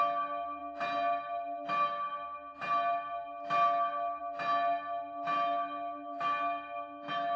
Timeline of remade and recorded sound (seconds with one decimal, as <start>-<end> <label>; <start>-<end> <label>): 0.0-7.4 recorded